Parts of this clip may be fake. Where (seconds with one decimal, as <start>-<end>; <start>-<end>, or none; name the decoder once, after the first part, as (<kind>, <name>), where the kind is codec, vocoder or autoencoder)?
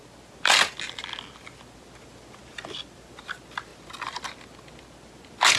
none